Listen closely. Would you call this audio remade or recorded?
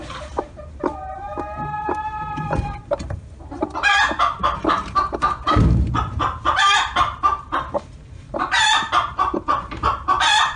remade